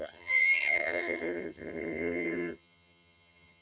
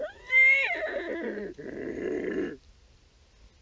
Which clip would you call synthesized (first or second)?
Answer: first